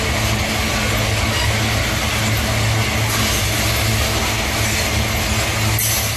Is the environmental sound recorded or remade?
recorded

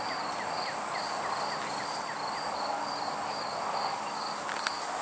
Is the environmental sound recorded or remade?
recorded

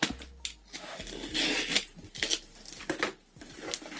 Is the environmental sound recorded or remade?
recorded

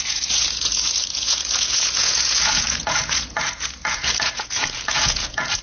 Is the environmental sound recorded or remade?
remade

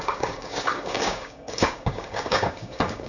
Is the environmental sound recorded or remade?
remade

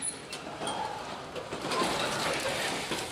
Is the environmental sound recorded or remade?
remade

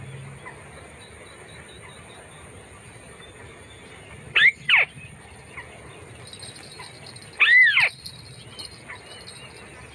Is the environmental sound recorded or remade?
recorded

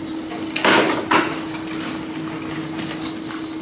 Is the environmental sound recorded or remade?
recorded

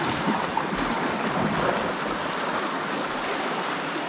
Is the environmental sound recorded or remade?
recorded